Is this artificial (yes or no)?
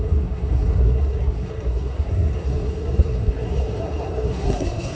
yes